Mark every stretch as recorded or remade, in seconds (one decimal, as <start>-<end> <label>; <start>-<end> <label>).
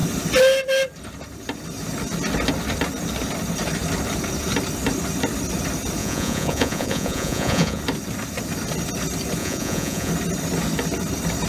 0.0-6.0 recorded; 6.0-7.8 remade; 7.8-9.4 recorded; 9.4-10.1 remade; 10.1-11.5 recorded